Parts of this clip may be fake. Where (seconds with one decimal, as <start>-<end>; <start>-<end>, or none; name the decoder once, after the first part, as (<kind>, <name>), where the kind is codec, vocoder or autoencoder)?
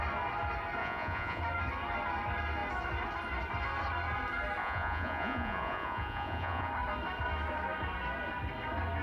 0.8-1.4 (vocoder, Vocos); 4.6-6.7